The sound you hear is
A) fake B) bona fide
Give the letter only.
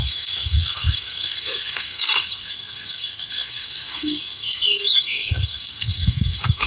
A